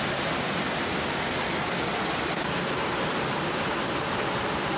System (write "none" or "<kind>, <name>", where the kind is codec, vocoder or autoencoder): none